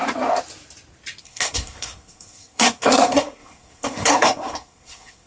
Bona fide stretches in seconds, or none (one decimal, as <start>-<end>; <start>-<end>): 0.0-1.2